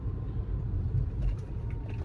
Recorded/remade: remade